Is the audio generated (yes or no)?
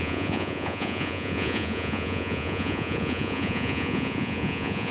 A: yes